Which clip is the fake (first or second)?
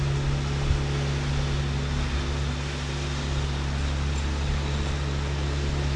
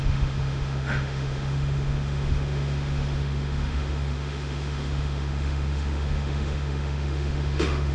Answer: second